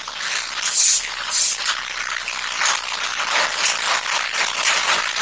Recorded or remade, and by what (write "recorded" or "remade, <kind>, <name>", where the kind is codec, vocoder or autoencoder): recorded